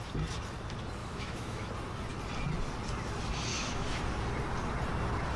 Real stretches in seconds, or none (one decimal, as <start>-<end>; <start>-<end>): 0.0-1.0; 1.7-3.5; 4.0-5.4